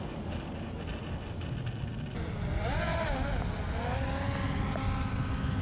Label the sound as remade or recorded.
recorded